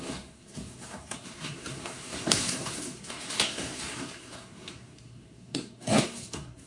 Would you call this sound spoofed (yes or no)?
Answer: yes